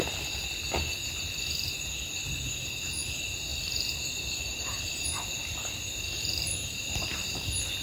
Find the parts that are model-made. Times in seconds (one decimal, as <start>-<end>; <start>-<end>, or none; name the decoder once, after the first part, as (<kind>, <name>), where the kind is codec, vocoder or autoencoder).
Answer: 3.5-5.1 (vocoder, BigVGAN v2)